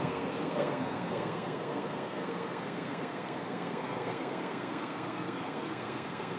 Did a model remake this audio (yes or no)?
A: yes